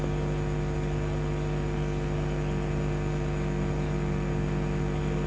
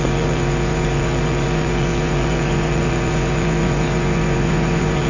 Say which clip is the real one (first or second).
first